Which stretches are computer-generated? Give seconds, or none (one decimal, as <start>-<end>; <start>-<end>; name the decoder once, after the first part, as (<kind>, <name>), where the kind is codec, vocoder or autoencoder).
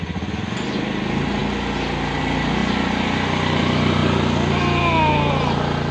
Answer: none